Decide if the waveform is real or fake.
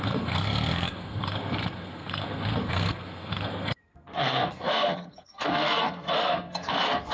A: fake